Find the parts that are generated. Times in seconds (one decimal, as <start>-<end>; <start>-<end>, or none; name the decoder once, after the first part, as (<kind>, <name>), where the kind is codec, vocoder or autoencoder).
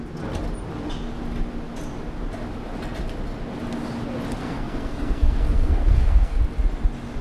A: 4.4-6.4 (codec, SNAC)